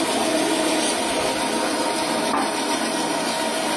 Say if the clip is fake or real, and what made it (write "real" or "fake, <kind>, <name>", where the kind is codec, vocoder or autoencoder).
real